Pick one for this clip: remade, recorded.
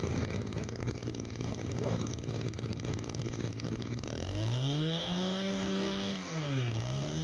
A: remade